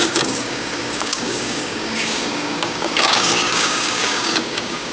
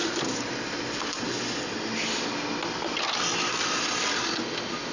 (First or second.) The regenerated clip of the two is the first